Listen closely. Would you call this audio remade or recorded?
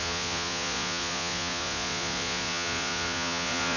remade